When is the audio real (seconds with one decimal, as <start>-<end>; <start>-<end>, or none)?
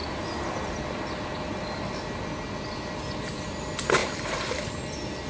0.0-5.3